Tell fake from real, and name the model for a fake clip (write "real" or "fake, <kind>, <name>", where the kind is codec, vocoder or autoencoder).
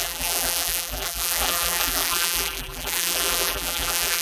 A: fake, vocoder, BigVGAN v2